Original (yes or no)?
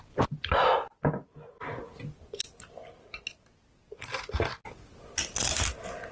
yes